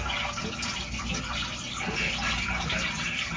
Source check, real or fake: real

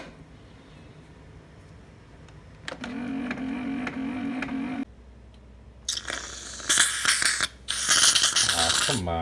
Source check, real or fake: real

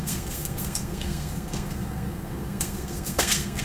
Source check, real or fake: fake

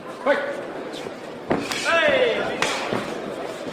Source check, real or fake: real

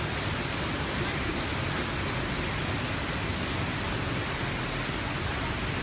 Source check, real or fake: real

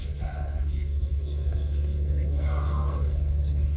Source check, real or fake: fake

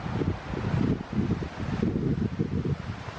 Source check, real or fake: real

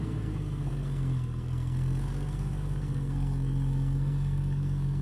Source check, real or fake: fake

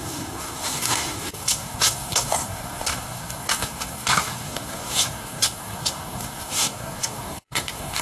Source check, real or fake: fake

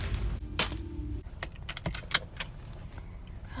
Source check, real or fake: real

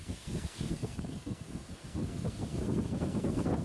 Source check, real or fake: fake